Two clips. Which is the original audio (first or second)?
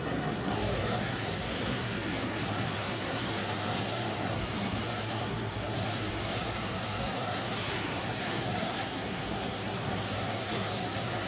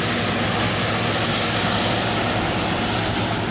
second